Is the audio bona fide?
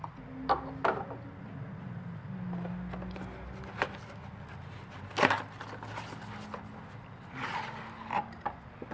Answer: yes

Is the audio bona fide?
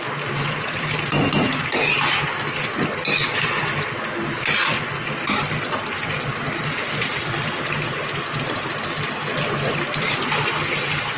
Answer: yes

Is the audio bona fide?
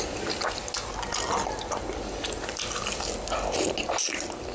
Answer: yes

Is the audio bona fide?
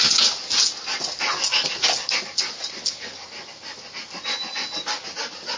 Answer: yes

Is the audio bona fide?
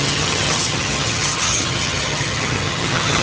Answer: no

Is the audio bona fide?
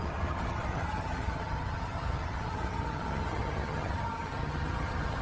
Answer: no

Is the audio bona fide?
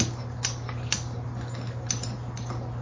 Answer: yes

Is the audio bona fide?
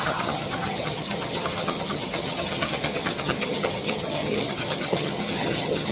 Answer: no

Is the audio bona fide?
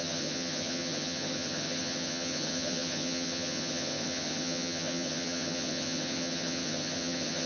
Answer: no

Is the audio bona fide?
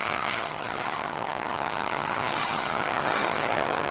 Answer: no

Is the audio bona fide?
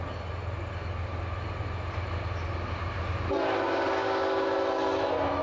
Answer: yes